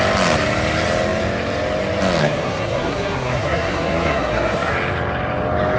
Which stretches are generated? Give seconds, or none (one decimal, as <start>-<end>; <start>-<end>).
2.2-4.7